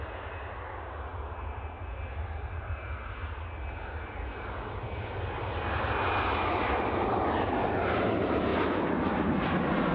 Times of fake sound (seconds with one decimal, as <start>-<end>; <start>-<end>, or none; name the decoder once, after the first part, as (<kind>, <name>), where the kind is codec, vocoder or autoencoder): none